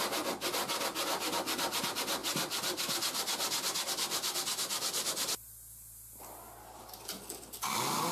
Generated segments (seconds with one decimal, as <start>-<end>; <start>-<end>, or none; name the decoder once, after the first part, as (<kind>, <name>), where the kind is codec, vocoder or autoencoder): none